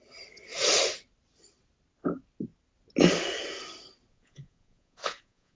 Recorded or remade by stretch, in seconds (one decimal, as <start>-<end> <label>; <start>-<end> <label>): 0.0-4.1 recorded; 4.1-5.6 remade